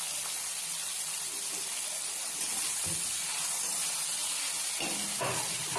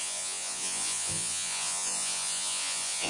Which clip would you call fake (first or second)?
second